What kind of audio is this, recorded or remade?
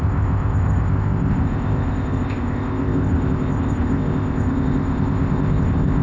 remade